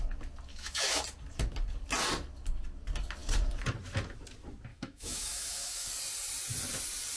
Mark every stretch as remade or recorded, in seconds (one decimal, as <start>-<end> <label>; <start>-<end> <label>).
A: 0.0-0.5 recorded; 0.5-1.0 remade; 1.0-4.7 recorded; 4.7-5.9 remade; 5.9-7.2 recorded